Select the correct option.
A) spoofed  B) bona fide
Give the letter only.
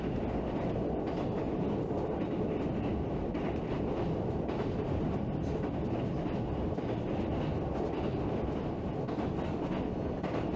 B